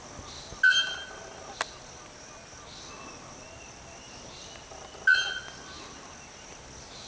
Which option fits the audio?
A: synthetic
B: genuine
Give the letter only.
B